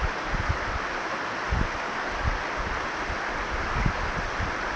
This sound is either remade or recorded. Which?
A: recorded